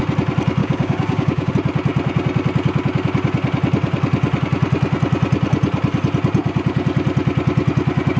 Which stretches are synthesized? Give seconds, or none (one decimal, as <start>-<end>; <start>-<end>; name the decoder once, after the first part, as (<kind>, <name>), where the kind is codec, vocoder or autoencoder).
0.6-1.5 (codec, DAC)